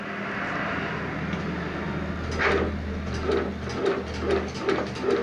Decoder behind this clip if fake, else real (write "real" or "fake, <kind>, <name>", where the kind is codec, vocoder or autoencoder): real